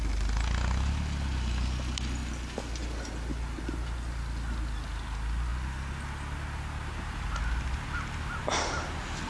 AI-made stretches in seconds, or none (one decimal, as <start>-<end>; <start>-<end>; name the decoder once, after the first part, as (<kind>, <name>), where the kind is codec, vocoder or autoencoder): none